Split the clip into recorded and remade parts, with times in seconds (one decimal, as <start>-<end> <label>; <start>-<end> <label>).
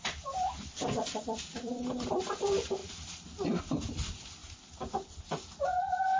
0.0-2.8 remade; 2.8-3.6 recorded; 3.6-6.2 remade